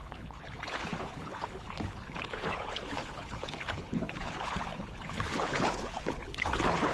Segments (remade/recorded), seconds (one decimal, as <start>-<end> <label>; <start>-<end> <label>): 0.0-6.9 remade